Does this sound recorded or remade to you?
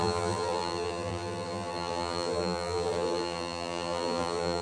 remade